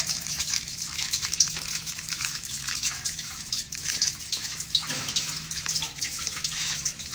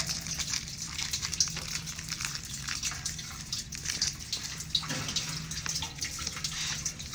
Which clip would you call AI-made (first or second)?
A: first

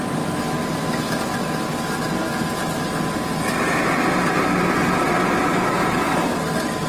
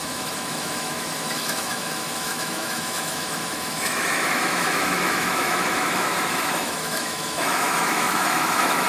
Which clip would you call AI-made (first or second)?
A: second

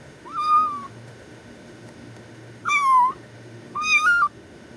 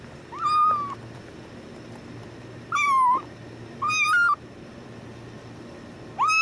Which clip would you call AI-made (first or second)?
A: first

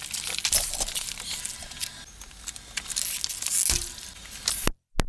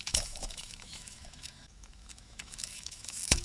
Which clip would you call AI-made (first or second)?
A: second